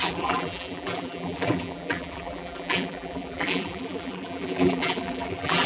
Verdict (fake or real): fake